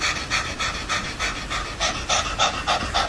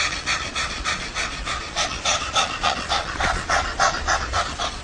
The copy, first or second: second